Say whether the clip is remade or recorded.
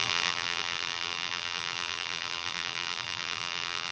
remade